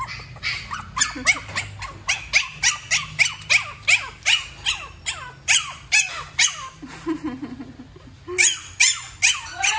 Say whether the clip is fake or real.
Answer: real